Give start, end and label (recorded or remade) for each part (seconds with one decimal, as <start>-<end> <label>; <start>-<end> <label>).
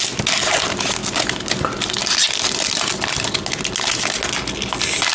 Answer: 0.0-5.1 recorded